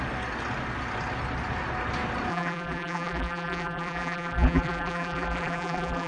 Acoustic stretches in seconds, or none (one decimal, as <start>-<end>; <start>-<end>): 0.0-2.3